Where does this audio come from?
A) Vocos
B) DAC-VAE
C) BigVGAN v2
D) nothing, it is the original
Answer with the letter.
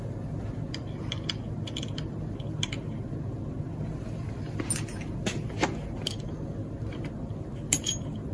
D